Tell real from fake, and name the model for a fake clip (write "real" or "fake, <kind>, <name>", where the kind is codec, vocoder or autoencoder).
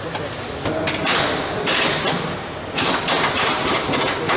real